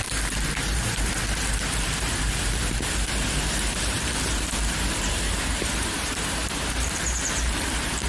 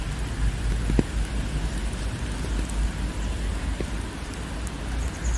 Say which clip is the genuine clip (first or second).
second